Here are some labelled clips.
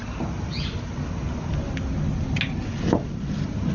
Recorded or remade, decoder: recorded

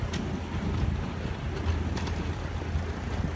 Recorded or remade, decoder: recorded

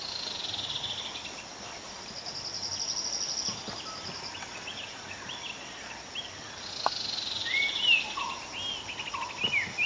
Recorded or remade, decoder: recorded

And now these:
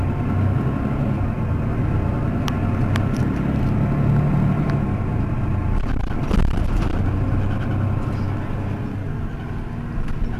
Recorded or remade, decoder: recorded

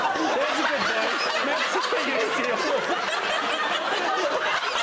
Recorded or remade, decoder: recorded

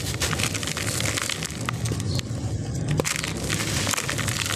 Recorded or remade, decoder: recorded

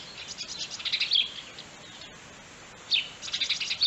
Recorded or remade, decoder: recorded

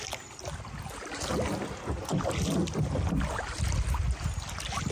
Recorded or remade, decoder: recorded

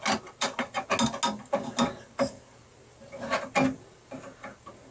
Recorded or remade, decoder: recorded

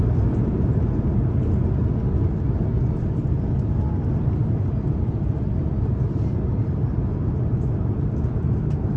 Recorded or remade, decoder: recorded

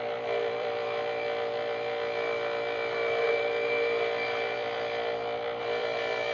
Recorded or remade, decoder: remade, vocoder, BigVGAN v2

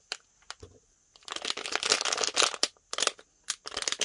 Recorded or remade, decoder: recorded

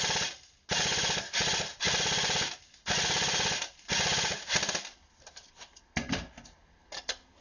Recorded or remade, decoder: recorded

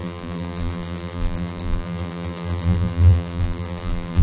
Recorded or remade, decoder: remade, vocoder, BigVGAN v2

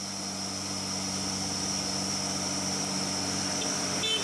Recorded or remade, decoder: recorded